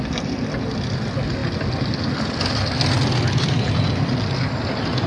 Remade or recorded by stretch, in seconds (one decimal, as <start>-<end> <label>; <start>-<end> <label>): 0.0-5.1 recorded